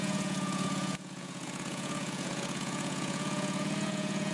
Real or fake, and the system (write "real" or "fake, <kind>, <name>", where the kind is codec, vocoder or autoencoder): fake, vocoder, Vocos